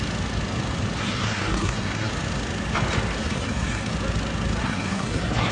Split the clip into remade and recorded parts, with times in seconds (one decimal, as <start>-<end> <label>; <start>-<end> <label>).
0.0-1.0 recorded; 1.0-2.1 remade; 2.1-3.2 recorded; 3.2-3.9 remade; 3.9-4.6 recorded; 4.6-5.5 remade